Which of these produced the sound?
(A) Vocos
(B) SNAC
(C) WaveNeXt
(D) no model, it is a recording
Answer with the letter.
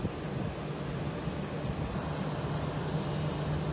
D